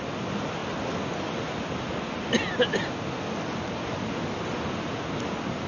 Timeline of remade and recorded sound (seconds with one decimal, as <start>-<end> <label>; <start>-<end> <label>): 0.0-5.7 recorded

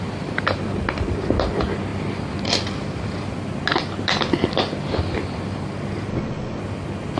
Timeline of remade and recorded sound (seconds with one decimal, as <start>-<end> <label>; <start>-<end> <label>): 0.0-6.1 recorded; 6.1-6.6 remade; 6.6-7.2 recorded

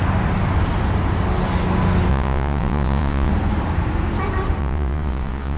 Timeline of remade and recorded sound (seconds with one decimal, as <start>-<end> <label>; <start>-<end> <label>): 0.0-2.1 recorded; 2.1-3.3 remade; 3.3-4.6 recorded; 4.6-5.6 remade

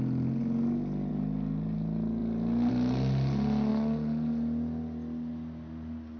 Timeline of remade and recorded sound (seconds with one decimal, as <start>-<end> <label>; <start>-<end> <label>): 0.0-6.2 recorded

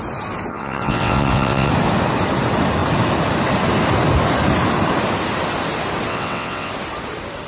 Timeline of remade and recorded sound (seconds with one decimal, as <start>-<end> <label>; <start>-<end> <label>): 0.0-0.5 recorded; 0.5-1.7 remade; 1.7-6.1 recorded; 6.1-6.7 remade; 6.7-7.5 recorded

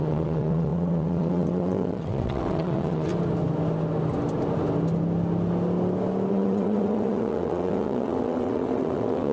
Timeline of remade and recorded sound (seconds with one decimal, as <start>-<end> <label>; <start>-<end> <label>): 0.0-3.1 remade; 3.1-6.3 recorded; 6.3-9.3 remade

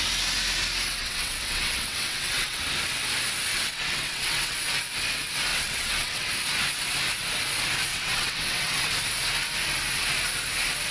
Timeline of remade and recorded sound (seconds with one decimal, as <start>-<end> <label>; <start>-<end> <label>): 0.0-1.0 recorded; 1.0-2.7 remade; 2.7-3.5 recorded; 3.5-4.6 remade; 4.6-5.5 recorded; 5.5-6.3 remade; 6.3-7.9 recorded; 7.9-8.9 remade; 8.9-10.9 recorded

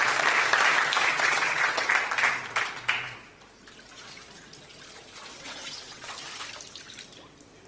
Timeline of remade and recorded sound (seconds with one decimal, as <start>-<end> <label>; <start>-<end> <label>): 0.0-1.1 recorded; 1.1-1.9 remade; 1.9-5.3 recorded; 5.3-6.1 remade; 6.1-7.7 recorded